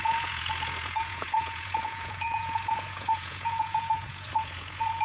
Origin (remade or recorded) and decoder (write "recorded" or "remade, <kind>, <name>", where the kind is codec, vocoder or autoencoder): remade, vocoder, Vocos